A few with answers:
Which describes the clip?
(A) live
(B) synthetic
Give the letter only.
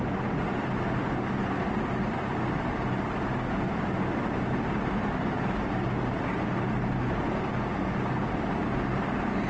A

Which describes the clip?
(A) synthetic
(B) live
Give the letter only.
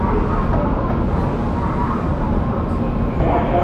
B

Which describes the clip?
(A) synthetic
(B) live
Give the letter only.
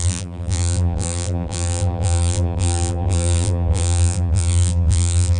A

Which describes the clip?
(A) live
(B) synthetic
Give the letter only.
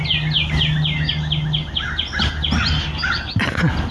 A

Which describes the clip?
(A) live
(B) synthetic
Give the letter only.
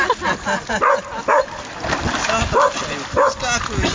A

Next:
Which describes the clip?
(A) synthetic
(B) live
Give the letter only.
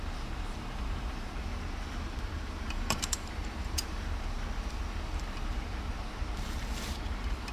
A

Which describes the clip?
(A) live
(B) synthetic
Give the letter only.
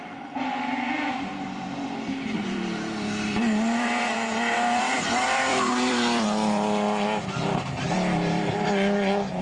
B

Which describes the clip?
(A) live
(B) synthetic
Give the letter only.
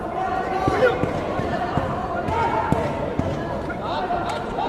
B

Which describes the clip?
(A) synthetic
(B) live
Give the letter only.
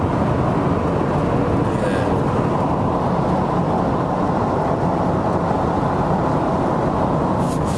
B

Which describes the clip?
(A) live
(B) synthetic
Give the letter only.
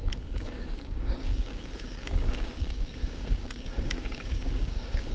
B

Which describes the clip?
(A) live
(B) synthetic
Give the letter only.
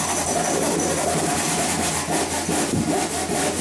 A